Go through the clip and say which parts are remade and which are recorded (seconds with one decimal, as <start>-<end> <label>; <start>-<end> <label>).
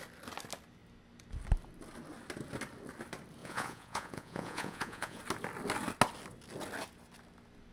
0.0-3.4 recorded; 3.4-5.2 remade; 5.2-7.7 recorded